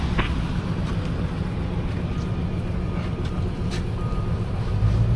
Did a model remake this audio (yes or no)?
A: no